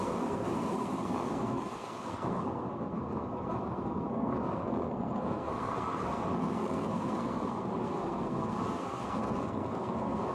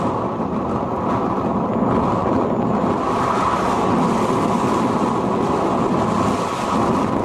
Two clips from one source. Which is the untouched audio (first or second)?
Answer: second